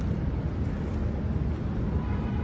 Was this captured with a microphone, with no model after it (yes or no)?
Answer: yes